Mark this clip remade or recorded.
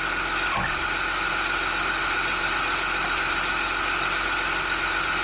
recorded